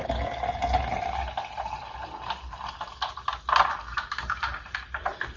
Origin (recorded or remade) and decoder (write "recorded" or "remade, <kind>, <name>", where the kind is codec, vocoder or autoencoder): recorded